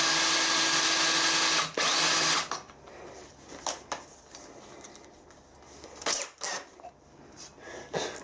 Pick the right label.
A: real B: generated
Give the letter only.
A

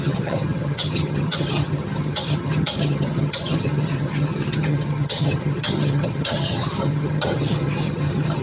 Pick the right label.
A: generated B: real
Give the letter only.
A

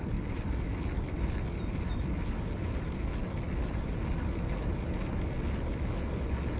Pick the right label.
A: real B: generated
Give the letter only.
A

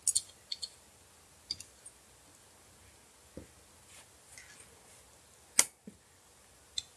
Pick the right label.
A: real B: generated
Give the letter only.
A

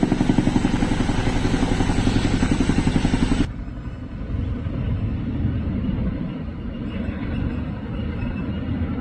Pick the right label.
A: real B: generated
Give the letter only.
A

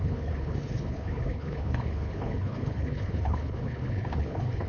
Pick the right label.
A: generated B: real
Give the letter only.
A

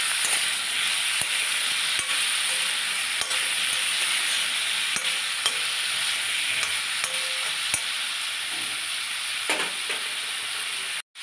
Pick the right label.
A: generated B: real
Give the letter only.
B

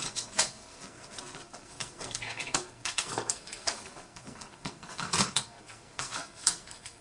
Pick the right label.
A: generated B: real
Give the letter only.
A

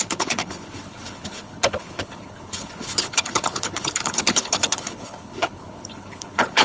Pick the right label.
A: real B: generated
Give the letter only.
B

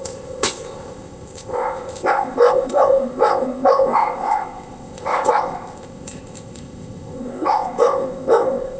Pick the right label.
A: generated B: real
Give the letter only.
A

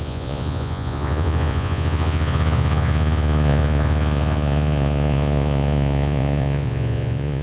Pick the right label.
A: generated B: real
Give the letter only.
A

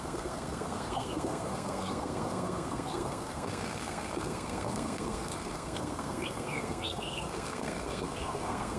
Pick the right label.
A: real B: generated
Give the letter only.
B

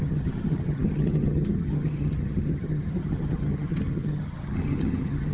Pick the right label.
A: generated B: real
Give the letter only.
A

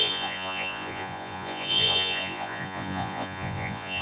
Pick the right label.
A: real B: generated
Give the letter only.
B